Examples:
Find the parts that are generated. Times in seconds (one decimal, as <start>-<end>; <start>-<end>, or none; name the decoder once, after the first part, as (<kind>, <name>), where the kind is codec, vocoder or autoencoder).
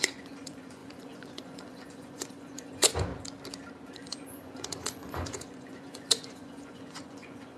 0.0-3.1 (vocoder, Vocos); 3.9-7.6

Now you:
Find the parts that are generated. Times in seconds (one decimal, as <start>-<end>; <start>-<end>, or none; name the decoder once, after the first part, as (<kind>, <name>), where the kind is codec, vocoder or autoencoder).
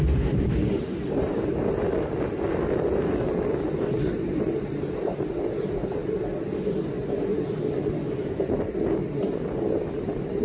none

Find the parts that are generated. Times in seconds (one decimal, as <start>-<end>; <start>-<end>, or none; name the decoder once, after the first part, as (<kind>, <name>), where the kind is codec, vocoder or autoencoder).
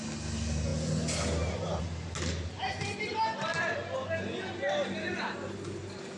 none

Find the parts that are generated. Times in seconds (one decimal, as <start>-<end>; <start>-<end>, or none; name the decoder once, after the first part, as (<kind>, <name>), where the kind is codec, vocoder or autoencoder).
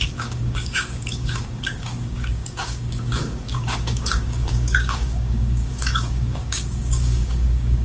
0.0-7.8 (codec, DAC)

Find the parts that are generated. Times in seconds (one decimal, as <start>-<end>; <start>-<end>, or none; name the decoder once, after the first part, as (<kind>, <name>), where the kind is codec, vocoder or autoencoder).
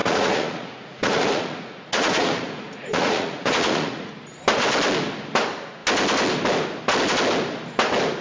0.0-4.1 (vocoder, Vocos)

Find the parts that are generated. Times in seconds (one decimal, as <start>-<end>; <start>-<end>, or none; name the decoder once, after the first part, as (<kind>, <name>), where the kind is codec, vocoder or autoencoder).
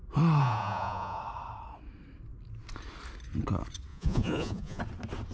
0.4-1.2 (vocoder, Vocos); 3.9-4.8